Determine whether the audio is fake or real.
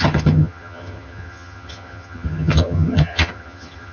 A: fake